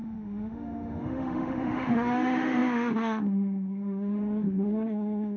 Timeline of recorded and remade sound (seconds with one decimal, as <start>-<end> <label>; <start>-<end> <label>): 0.0-5.4 remade